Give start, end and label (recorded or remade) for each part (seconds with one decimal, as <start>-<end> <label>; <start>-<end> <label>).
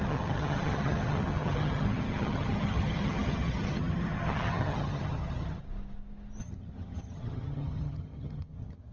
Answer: 0.0-5.6 remade; 5.6-6.4 recorded; 6.4-8.9 remade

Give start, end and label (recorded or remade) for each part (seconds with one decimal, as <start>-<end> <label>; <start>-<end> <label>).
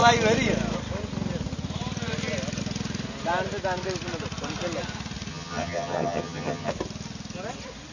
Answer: 0.0-5.3 recorded; 5.3-6.7 remade; 6.7-7.9 recorded